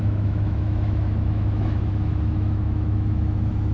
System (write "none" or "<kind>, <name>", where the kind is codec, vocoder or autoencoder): autoencoder, DAC-VAE